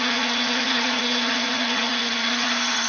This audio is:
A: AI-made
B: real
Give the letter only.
A